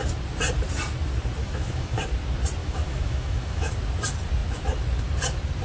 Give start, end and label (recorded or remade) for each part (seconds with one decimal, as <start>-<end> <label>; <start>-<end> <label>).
0.0-1.4 recorded; 1.4-2.0 remade; 2.0-2.6 recorded; 2.6-3.7 remade; 3.7-5.6 recorded